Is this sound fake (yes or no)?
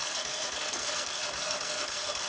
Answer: yes